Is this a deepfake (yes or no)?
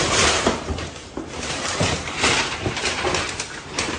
yes